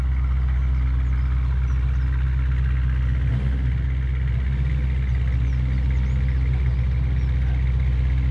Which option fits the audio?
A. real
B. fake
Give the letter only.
A